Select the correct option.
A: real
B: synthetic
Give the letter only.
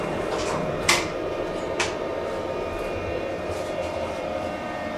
B